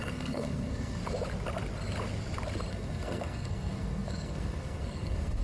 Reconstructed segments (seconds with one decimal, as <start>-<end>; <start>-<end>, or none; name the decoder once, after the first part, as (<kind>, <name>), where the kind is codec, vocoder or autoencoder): 0.0-1.0 (codec, SNAC); 2.7-5.4